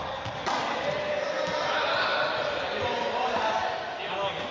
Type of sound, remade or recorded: recorded